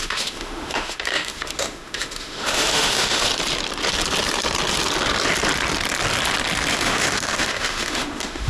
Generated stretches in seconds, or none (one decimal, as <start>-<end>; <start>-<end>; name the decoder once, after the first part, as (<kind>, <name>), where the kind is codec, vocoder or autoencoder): 0.0-3.3 (autoencoder, DAC-VAE); 6.7-8.5